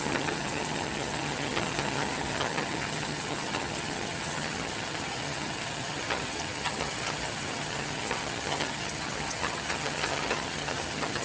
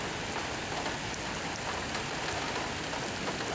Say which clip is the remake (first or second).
first